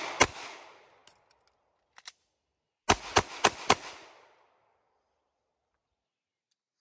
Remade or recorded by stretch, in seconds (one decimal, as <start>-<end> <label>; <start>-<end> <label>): 0.0-6.8 recorded